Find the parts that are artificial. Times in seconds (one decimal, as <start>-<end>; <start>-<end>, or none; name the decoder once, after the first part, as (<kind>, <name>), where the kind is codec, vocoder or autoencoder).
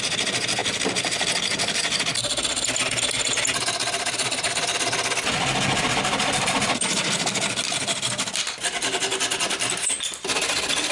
0.6-2.0 (vocoder, BigVGAN v2)